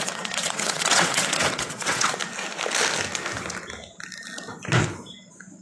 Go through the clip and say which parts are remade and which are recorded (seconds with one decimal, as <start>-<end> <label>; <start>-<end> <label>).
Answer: 0.0-2.2 remade; 2.2-5.6 recorded